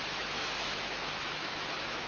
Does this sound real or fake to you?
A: fake